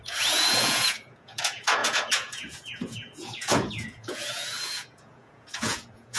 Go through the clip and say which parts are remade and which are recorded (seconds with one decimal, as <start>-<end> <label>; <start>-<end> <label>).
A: 0.0-6.2 remade